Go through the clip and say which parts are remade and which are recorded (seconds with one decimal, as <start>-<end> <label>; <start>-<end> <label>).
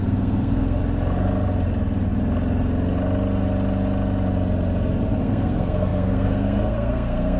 0.0-0.8 remade; 0.8-5.2 recorded; 5.2-7.4 remade